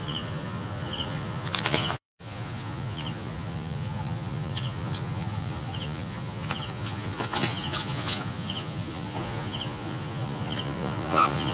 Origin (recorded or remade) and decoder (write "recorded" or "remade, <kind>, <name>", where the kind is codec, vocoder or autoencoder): remade, vocoder, Vocos